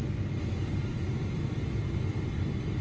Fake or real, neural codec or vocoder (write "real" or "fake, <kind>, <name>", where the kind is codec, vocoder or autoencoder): fake, vocoder, BigVGAN v2